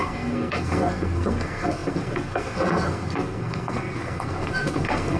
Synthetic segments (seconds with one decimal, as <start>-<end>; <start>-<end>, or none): 0.0-5.2